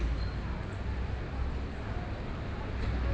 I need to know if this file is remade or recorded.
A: recorded